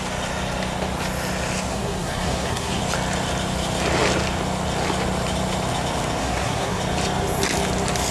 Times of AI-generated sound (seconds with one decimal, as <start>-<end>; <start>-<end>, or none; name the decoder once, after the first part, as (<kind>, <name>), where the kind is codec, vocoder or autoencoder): 1.7-2.8 (codec, SNAC); 6.2-6.8